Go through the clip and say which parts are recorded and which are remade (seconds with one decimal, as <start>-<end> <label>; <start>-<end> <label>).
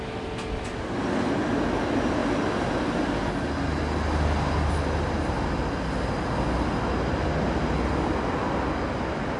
0.0-9.4 recorded